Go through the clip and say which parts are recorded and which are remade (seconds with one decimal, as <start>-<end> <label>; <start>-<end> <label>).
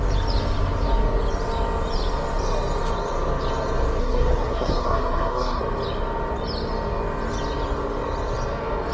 0.0-4.0 recorded; 4.0-5.6 remade; 5.6-8.9 recorded